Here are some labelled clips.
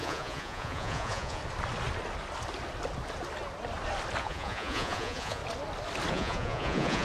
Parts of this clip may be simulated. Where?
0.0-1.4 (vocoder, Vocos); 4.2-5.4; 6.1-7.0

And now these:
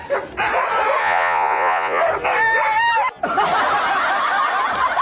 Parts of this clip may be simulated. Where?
1.0-2.0 (vocoder, Vocos)

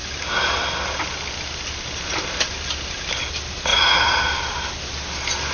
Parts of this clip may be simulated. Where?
3.7-4.2 (vocoder, Vocos)

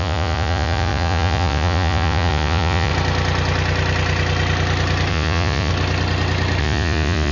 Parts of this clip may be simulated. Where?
0.0-2.9 (vocoder, Vocos); 5.1-5.7; 6.6-7.3

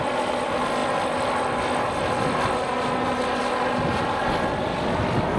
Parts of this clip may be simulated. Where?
none

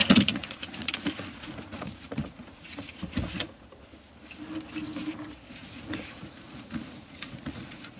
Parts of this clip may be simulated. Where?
0.0-3.8 (vocoder, Vocos); 5.6-8.0

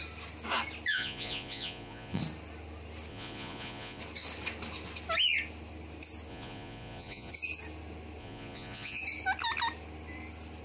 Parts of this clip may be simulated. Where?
0.9-2.2 (vocoder, Vocos); 3.1-4.0; 6.3-7.3; 8.2-9.0